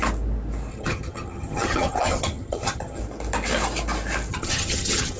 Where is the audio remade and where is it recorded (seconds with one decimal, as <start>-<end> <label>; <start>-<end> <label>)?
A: 0.0-0.7 recorded; 0.7-3.0 remade; 3.0-4.3 recorded; 4.3-5.2 remade